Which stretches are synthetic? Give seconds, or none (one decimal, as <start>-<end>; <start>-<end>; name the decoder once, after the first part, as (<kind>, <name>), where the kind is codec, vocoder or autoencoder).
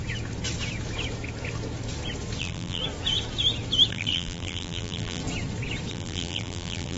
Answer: 2.4-2.8 (vocoder, BigVGAN v2); 3.9-5.2; 5.9-7.0